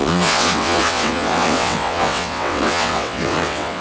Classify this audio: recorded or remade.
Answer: remade